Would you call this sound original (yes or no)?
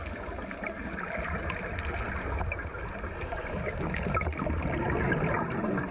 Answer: yes